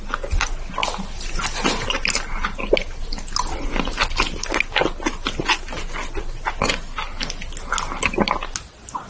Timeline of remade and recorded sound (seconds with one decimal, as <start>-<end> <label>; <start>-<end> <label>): 0.0-9.1 recorded